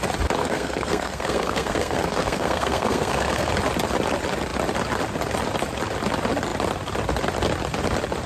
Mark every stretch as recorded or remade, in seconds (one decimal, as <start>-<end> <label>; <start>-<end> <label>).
0.0-0.4 recorded; 0.4-3.5 remade; 3.5-8.3 recorded